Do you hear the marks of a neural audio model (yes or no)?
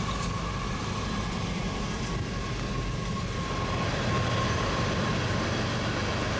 no